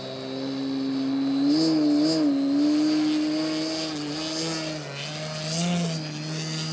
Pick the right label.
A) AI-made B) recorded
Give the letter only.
B